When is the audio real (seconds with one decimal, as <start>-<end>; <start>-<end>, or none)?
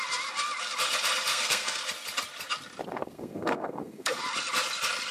0.0-1.3; 1.8-2.9; 4.2-5.1